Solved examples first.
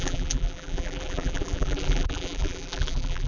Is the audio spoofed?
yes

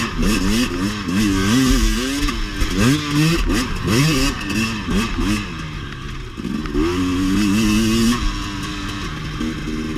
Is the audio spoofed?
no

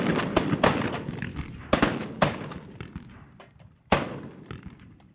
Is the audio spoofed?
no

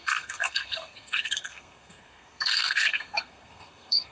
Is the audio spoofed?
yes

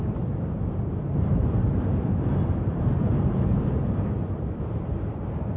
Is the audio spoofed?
yes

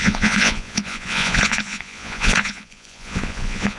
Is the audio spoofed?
yes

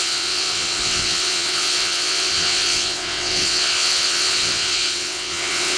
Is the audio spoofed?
yes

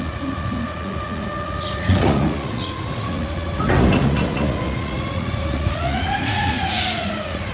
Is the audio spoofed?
yes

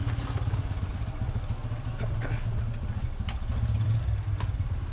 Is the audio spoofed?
no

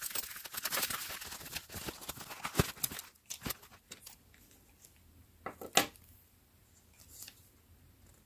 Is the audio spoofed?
no